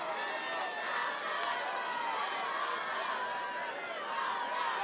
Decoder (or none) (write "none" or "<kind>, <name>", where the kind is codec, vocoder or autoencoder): none